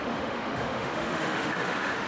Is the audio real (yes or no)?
no